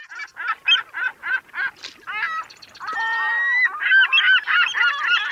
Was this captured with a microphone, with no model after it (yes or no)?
yes